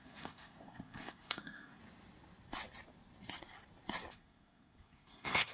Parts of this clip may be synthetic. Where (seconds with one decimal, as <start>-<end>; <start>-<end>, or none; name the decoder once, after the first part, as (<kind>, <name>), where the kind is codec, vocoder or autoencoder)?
0.0-1.8 (codec, SNAC); 4.1-5.5